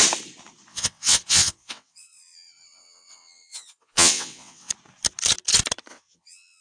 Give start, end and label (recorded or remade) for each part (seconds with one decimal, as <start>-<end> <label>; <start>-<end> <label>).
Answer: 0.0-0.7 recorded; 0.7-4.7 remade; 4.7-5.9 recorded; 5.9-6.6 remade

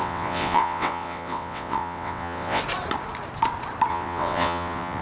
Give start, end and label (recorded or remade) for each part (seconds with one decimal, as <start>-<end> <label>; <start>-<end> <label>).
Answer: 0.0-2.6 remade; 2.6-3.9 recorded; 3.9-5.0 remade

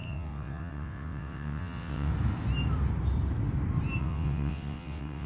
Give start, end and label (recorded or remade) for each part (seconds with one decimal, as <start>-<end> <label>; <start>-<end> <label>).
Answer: 0.0-2.1 remade; 2.1-4.0 recorded; 4.0-5.3 remade

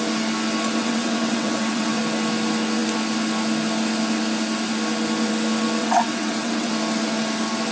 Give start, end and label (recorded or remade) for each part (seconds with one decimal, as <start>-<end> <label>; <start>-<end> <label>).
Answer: 0.0-0.8 recorded; 0.8-2.0 remade; 2.0-5.8 recorded; 5.8-6.7 remade; 6.7-7.7 recorded

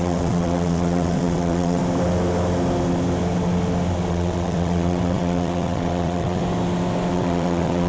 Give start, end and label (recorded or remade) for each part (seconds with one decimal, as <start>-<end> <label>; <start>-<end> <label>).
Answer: 0.0-1.8 remade; 1.8-4.1 recorded; 4.1-6.4 remade; 6.4-7.1 recorded; 7.1-7.9 remade